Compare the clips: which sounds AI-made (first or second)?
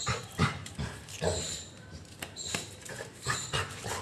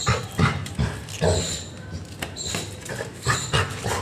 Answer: first